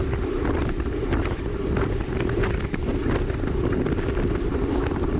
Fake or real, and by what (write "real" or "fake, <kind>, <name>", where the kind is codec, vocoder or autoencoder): fake, vocoder, BigVGAN v2